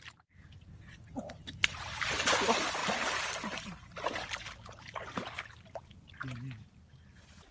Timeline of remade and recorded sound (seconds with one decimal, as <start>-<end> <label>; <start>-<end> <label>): 0.0-7.5 recorded